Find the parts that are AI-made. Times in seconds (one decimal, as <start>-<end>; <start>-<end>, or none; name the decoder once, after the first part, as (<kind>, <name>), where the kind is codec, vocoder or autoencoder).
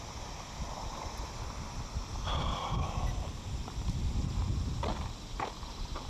2.1-4.4 (vocoder, BigVGAN v2)